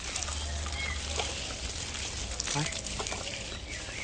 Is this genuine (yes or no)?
yes